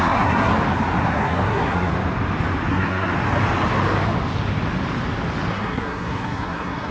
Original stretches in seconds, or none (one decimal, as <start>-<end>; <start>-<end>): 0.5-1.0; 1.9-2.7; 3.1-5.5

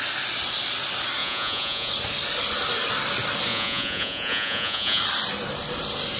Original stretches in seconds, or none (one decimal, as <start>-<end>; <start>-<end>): 0.0-1.2; 1.9-3.5; 5.0-6.2

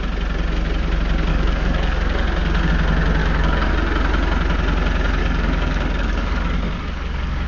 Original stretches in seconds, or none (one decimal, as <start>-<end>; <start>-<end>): 0.0-1.3; 2.7-3.2; 3.7-5.2

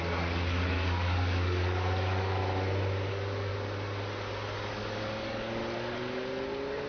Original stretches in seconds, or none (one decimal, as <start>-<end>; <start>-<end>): 2.4-3.1; 3.5-4.7; 5.6-6.9